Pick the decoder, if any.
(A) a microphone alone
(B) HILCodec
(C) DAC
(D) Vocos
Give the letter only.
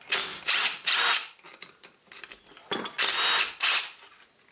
A